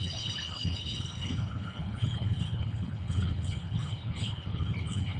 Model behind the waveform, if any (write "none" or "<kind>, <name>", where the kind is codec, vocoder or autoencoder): codec, HILCodec